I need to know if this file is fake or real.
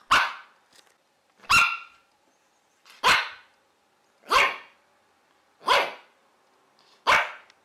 real